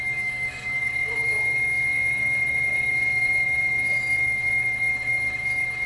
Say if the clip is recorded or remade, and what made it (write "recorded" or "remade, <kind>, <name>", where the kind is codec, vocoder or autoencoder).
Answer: remade, autoencoder, DAC-VAE